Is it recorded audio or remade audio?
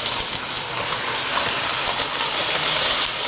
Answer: recorded